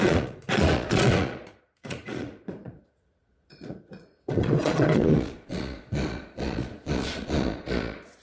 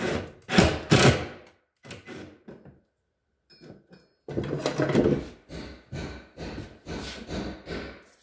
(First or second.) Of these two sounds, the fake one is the first